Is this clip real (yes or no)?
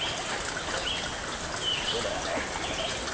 yes